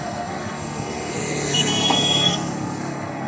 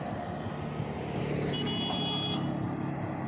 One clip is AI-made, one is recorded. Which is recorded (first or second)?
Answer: second